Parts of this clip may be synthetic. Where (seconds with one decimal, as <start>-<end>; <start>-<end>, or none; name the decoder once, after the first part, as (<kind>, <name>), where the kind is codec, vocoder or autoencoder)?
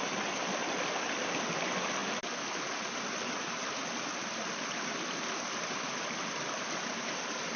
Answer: none